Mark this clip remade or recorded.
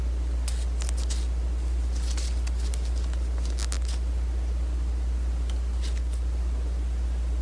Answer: recorded